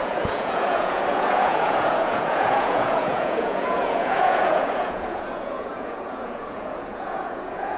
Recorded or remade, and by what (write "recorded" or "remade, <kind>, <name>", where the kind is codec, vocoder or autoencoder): remade, vocoder, Vocos